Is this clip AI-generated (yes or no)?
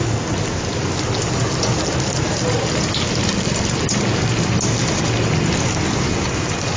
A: no